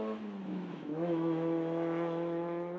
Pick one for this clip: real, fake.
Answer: fake